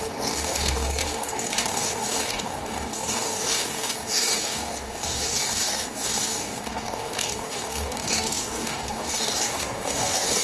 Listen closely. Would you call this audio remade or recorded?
remade